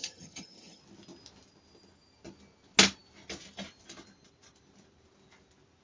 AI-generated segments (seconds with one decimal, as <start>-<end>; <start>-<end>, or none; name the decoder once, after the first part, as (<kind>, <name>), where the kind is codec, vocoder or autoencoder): 0.0-0.8 (vocoder, HiFi-GAN)